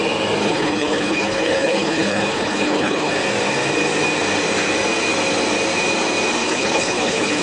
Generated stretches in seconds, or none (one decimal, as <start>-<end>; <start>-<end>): 0.4-3.1; 6.4-7.4